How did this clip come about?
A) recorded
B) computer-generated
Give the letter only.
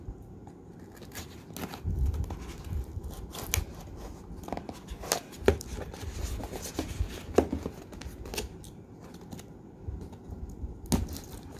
A